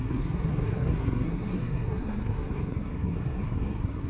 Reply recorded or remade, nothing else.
remade